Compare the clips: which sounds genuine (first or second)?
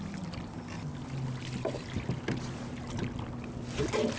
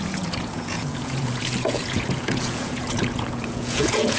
first